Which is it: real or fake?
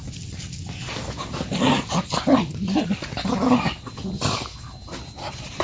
real